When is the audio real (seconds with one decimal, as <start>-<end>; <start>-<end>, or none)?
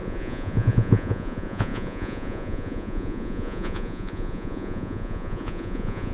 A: none